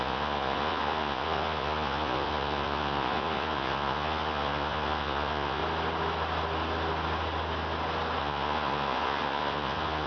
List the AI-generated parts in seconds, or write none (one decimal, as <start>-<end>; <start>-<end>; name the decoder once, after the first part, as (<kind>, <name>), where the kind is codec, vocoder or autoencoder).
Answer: 0.0-5.6 (vocoder, Vocos); 8.2-10.1